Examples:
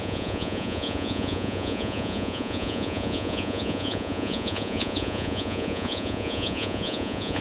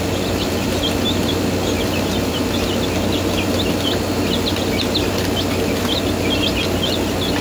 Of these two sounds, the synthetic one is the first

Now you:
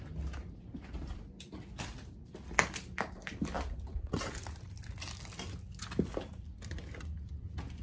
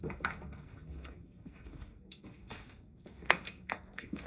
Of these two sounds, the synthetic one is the second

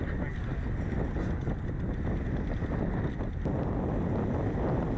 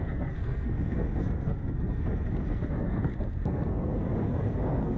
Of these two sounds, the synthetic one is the second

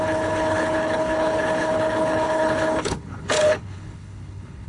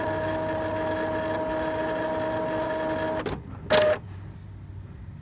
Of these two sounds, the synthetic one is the first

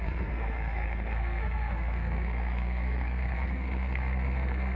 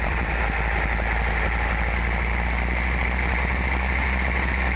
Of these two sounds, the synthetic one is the first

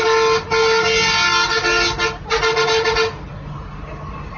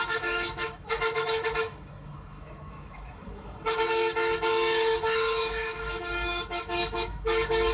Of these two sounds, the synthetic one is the second